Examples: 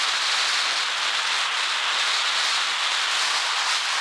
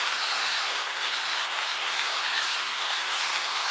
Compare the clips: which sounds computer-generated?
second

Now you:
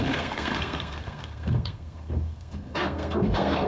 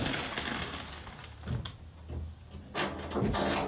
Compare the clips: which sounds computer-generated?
first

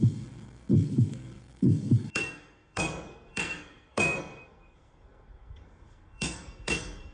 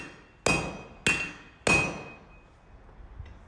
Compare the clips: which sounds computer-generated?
first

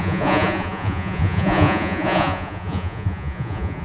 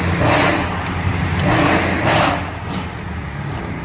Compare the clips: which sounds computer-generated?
first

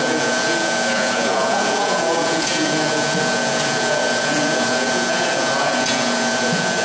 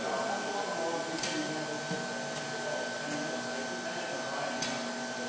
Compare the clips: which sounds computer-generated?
first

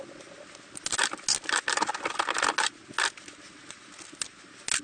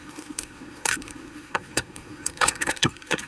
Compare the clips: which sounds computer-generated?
second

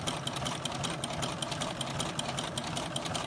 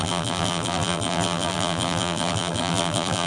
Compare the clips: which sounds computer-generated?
second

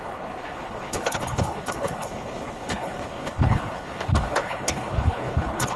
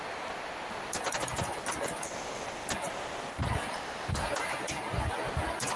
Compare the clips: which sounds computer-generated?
first